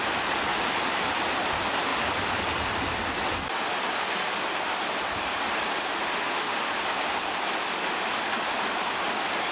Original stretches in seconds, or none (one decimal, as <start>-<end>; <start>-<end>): 0.0-6.2; 6.7-9.5